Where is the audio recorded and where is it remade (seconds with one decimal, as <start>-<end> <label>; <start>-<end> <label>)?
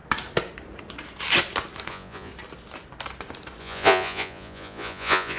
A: 0.0-1.9 recorded; 1.9-2.3 remade; 2.3-3.6 recorded; 3.6-5.4 remade